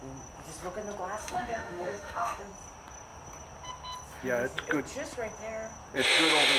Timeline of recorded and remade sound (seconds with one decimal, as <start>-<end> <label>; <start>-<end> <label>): 0.0-1.2 recorded; 1.2-2.4 remade; 2.4-6.6 recorded